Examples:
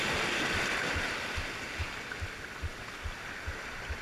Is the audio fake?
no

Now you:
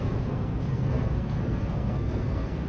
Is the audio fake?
yes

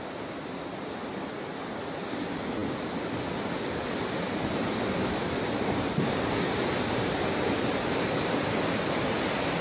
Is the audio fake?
no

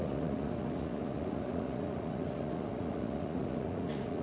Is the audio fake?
yes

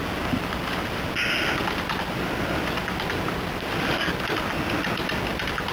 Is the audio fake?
no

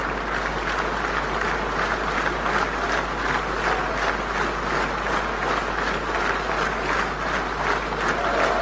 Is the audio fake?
no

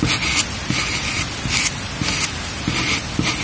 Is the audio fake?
no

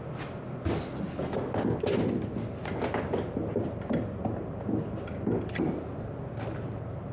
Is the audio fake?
no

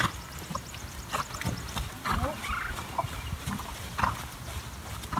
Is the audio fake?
no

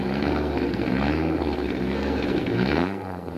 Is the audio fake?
yes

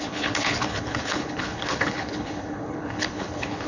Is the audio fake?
yes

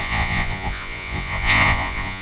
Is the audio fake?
yes